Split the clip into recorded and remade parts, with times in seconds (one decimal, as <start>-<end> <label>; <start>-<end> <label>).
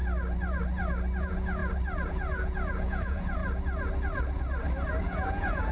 0.0-1.2 recorded; 1.2-1.6 remade; 1.6-2.1 recorded; 2.1-3.4 remade; 3.4-5.0 recorded; 5.0-5.7 remade